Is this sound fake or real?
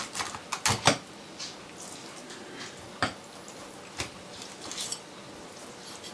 real